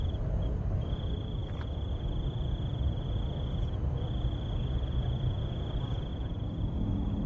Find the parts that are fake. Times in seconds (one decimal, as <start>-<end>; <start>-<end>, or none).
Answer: 0.0-6.1